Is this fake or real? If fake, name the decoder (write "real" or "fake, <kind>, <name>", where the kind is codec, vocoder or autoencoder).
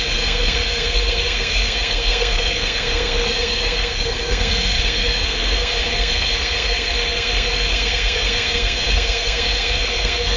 fake, codec, SNAC